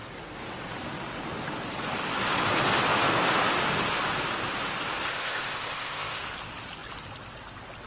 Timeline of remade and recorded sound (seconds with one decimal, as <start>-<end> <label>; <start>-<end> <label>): 0.0-5.1 recorded; 5.1-6.2 remade; 6.2-7.9 recorded